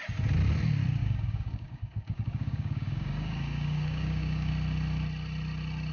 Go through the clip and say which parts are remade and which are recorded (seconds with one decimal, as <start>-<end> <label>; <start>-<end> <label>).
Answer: 0.0-1.0 recorded; 1.0-4.5 remade; 4.5-5.9 recorded